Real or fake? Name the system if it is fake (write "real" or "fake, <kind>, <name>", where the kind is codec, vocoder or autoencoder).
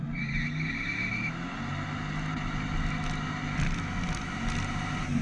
real